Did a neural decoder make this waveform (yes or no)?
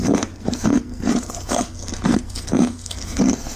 yes